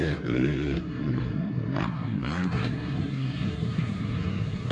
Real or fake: fake